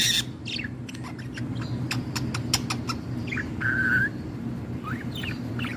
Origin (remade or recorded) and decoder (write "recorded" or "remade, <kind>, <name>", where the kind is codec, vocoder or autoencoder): recorded